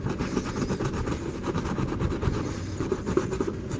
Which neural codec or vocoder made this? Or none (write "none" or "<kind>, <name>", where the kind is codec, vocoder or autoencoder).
none